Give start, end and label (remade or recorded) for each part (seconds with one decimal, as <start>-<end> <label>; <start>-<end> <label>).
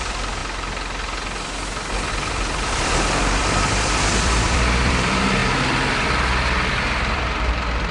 0.0-0.4 remade; 0.4-2.1 recorded; 2.1-7.9 remade